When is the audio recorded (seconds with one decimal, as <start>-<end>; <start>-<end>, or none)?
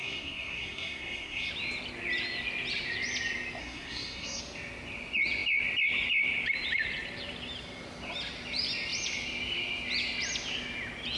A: 1.5-3.6; 4.4-11.2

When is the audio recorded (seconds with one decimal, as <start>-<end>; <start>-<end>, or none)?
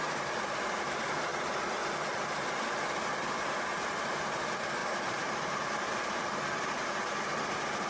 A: 1.3-4.3; 6.9-7.4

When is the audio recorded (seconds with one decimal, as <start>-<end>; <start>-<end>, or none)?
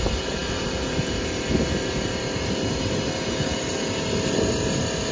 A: 0.0-5.1